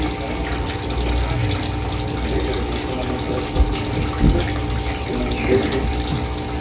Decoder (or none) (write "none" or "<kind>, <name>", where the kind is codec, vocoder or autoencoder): none